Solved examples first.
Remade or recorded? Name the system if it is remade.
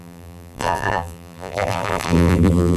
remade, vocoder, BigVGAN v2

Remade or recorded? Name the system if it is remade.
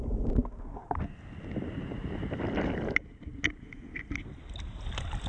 recorded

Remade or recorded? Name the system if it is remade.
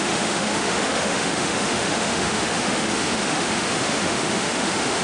remade, autoencoder, DAC-VAE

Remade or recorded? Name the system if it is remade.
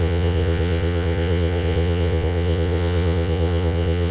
remade, vocoder, Vocos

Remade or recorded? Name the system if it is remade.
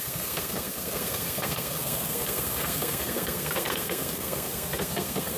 remade, codec, SNAC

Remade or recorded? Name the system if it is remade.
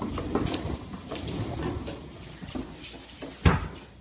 recorded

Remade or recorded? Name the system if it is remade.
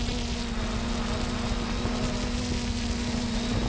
recorded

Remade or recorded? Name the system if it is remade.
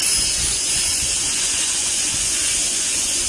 remade, vocoder, Vocos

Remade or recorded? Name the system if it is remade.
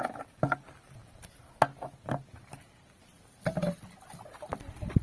recorded